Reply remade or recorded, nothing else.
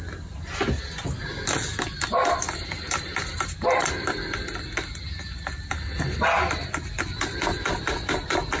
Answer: recorded